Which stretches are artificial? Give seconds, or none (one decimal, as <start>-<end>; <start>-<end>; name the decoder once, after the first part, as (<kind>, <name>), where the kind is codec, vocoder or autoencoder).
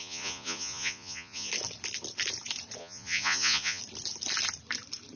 0.0-1.5 (vocoder, Vocos); 2.8-3.8